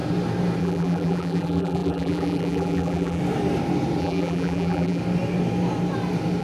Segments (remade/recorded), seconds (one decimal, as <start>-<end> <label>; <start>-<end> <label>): 0.0-0.6 recorded; 0.6-3.2 remade; 3.2-4.0 recorded; 4.0-5.0 remade; 5.0-6.4 recorded